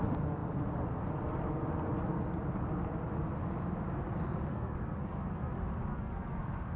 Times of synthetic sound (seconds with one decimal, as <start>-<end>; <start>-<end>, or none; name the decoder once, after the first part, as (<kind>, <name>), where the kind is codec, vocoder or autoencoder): 4.5-5.5 (codec, SNAC); 5.9-6.8